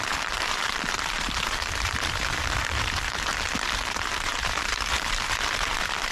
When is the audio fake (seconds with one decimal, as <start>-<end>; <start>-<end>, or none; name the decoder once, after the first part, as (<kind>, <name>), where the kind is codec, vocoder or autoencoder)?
0.0-3.3 (vocoder, BigVGAN v2); 3.9-6.1